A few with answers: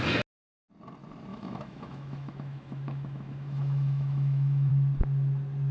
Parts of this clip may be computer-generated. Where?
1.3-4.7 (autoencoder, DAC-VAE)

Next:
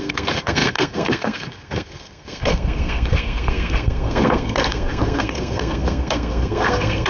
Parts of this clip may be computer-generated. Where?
0.0-7.1 (codec, SNAC)

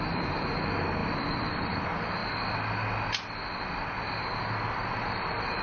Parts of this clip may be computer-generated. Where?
0.0-2.2 (vocoder, BigVGAN v2); 4.9-5.6

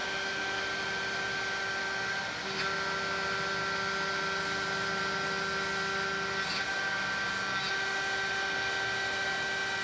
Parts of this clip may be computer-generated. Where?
none

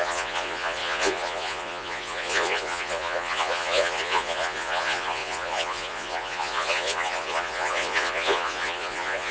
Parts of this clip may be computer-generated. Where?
0.0-9.3 (vocoder, Vocos)

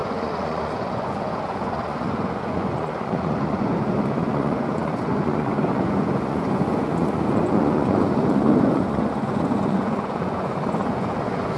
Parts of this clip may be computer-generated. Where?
0.0-11.6 (vocoder, Vocos)

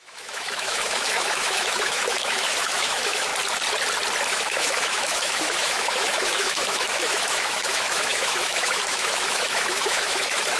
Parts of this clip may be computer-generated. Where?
0.0-3.3 (autoencoder, DAC-VAE); 4.3-10.6

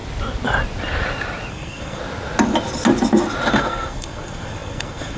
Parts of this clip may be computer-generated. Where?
1.5-2.0 (codec, SNAC); 3.5-5.2